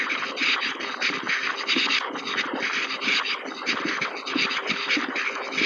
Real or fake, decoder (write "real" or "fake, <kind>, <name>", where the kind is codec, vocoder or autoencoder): real